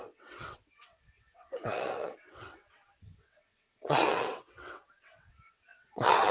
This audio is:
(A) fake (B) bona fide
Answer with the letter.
A